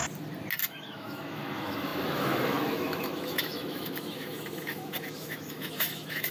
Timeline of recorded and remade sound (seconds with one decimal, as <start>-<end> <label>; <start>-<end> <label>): 0.0-0.6 recorded; 0.6-6.3 remade